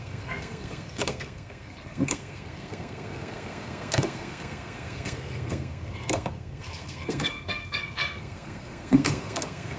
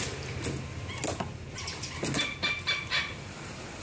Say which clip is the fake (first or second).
first